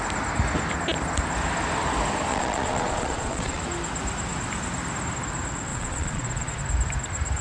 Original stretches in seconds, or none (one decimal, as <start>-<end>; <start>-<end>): 0.0-2.3; 3.6-5.7; 6.6-7.4